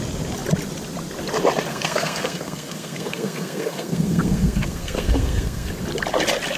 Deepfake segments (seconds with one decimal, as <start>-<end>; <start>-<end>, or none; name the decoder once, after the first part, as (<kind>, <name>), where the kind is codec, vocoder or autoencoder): 1.7-5.7 (codec, SNAC)